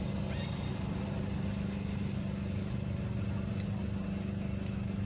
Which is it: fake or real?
real